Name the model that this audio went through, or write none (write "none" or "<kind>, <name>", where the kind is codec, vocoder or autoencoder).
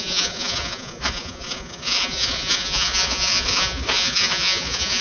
vocoder, Vocos